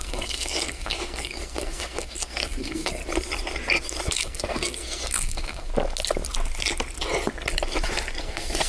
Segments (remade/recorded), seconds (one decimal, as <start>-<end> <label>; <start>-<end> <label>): 0.0-3.0 remade; 3.0-4.1 recorded; 4.1-5.7 remade; 5.7-8.2 recorded; 8.2-8.7 remade